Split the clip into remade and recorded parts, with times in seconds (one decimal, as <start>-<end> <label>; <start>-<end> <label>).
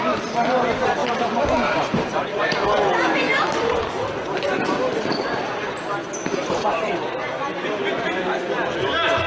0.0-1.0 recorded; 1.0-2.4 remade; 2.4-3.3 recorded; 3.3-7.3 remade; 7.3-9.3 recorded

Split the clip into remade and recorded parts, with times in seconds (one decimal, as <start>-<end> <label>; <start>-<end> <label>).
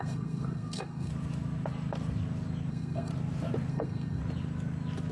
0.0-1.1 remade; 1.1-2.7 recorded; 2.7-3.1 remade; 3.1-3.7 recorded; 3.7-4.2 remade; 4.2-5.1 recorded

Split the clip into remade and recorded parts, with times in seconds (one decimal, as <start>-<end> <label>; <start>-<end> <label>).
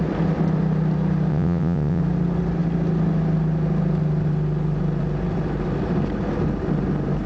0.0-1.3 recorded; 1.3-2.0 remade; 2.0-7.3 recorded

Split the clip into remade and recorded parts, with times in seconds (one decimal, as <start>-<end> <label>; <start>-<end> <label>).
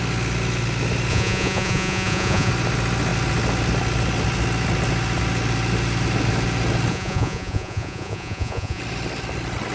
0.0-1.1 recorded; 1.1-2.5 remade; 2.5-6.9 recorded; 6.9-8.8 remade; 8.8-9.7 recorded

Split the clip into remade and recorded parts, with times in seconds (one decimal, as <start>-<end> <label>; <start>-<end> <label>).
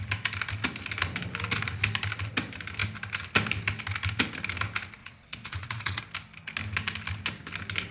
0.0-5.0 recorded; 5.0-6.0 remade; 6.0-7.9 recorded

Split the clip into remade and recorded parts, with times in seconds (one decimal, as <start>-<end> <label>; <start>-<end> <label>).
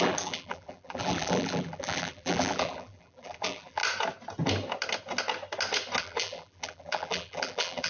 0.0-3.8 remade; 3.8-6.0 recorded; 6.0-7.9 remade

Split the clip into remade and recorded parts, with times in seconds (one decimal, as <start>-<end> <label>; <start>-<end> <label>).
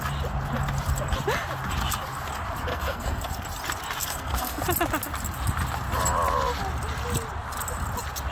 0.0-2.7 recorded; 2.7-3.3 remade; 3.3-4.0 recorded; 4.0-4.6 remade; 4.6-8.3 recorded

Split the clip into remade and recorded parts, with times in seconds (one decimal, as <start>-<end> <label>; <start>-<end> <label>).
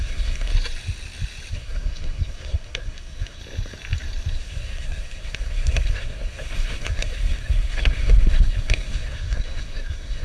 0.0-0.5 remade; 0.5-1.5 recorded; 1.5-3.4 remade; 3.4-4.3 recorded; 4.3-10.2 remade